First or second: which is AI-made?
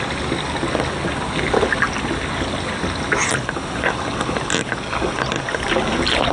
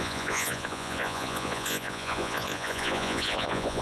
second